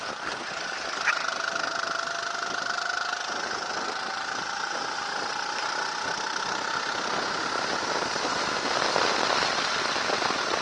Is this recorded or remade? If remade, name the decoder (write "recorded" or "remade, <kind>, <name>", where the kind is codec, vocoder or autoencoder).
recorded